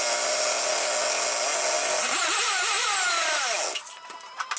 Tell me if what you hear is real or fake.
real